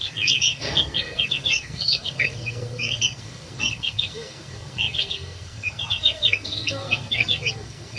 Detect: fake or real fake